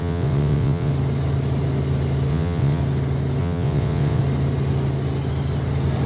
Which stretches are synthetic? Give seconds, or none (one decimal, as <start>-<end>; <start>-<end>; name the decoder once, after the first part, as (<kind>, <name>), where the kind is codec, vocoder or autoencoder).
0.0-0.9 (vocoder, WaveNeXt); 2.3-2.8; 3.4-4.2